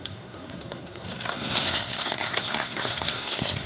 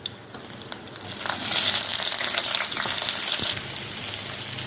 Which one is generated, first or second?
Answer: first